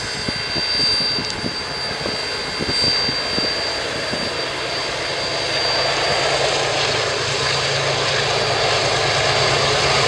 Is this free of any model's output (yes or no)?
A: yes